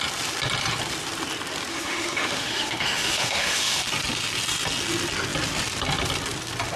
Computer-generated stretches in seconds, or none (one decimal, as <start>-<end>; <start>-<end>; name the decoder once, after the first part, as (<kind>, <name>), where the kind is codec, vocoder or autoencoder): 1.7-3.8 (autoencoder, DAC-VAE)